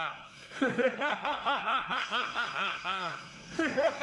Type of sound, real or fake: fake